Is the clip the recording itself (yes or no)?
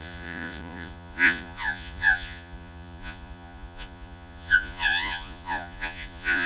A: no